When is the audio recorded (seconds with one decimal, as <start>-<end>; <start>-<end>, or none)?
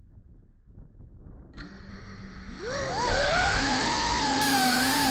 0.0-1.9